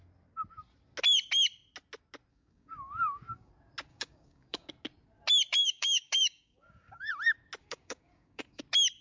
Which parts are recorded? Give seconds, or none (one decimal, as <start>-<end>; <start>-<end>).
0.0-2.3; 3.5-3.9; 4.7-5.6; 7.1-7.6; 8.6-9.0